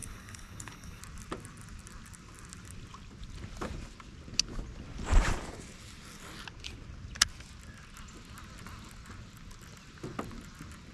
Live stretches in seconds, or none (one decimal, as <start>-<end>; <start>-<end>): 1.0-10.9